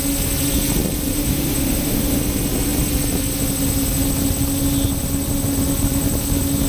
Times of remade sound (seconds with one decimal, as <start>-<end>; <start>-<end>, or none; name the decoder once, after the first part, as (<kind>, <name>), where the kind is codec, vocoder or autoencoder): 1.1-2.2 (autoencoder, DAC-VAE)

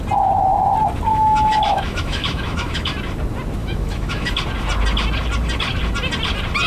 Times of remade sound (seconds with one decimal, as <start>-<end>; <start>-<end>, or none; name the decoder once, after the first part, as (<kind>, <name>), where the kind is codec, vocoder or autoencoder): 1.1-2.9 (autoencoder, DAC-VAE); 3.6-4.4

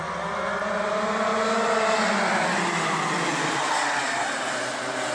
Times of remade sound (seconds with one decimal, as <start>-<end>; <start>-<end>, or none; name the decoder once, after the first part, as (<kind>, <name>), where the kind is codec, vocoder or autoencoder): none